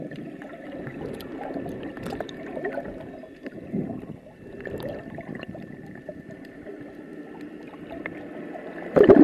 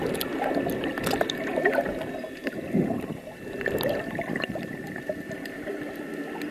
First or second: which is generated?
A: first